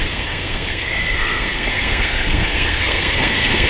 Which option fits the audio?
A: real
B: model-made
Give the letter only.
B